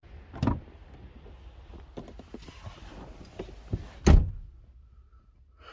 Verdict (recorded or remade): recorded